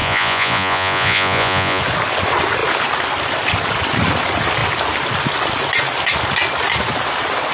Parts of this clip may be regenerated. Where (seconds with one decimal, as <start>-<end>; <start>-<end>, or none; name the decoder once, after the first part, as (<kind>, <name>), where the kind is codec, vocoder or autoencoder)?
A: 0.0-1.8 (vocoder, Vocos)